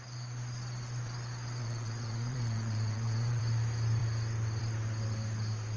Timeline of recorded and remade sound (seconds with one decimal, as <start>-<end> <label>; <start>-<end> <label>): 0.0-1.6 recorded; 1.6-3.4 remade; 3.4-5.8 recorded